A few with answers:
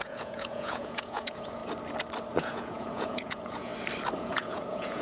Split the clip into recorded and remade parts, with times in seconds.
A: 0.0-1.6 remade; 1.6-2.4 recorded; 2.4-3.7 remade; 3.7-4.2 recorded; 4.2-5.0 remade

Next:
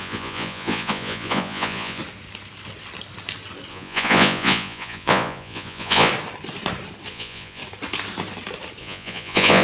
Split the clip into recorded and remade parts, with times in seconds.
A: 0.0-2.0 remade; 2.0-3.7 recorded; 3.7-6.1 remade; 6.1-7.1 recorded; 7.1-7.6 remade; 7.6-8.8 recorded; 8.8-9.6 remade

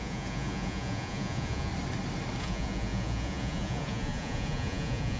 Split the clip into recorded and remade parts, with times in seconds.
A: 0.0-1.7 remade; 1.7-2.4 recorded; 2.4-5.2 remade